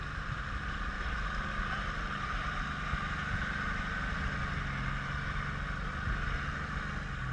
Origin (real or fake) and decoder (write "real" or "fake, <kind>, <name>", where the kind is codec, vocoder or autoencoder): real